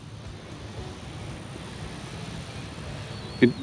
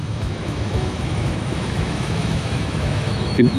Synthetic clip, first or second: second